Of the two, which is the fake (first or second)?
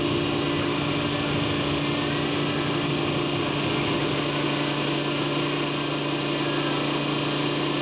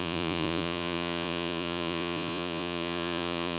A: second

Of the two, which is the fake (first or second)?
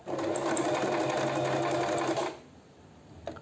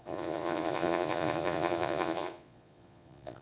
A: second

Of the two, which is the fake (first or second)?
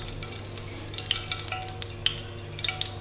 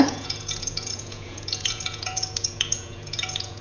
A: second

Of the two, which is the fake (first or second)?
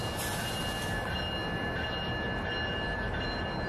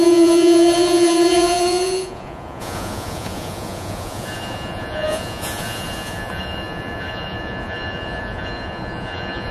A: second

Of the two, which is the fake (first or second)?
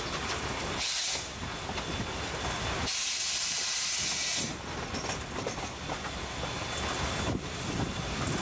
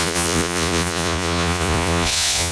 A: second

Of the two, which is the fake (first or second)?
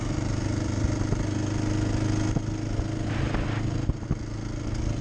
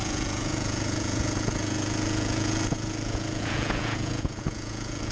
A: second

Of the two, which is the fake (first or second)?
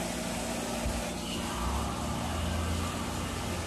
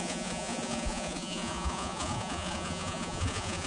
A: second